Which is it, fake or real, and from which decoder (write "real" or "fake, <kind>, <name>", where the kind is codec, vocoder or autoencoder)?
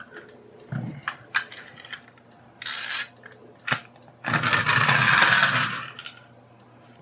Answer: real